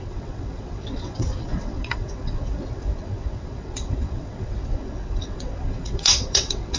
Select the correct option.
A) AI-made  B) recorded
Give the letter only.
A